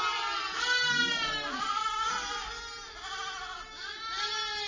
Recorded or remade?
recorded